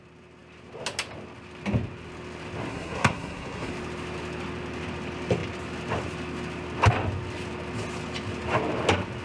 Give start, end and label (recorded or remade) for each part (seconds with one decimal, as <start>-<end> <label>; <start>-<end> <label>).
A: 0.0-2.7 recorded; 2.7-3.7 remade; 3.7-9.2 recorded